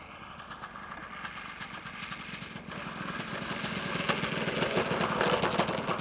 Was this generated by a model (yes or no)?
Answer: no